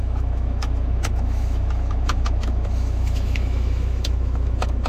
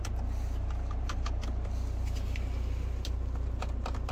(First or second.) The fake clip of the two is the first